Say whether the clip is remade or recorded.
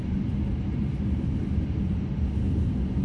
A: recorded